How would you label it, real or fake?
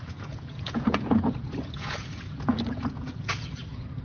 fake